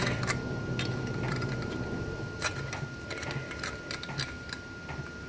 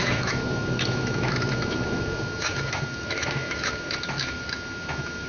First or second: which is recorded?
first